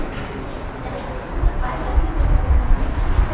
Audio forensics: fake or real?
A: real